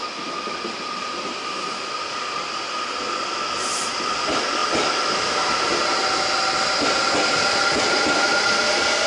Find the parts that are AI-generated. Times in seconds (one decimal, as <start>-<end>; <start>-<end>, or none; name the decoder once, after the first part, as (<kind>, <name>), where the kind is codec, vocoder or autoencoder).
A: none